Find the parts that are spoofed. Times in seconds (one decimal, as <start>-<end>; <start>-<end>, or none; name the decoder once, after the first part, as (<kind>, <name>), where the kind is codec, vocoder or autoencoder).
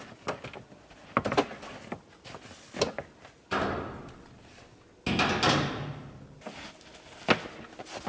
none